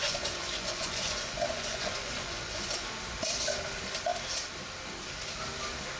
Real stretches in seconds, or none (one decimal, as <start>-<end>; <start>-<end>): 2.9-6.0